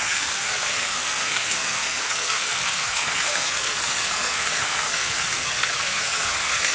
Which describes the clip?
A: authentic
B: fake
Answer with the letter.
B